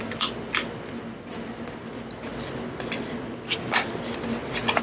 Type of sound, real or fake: real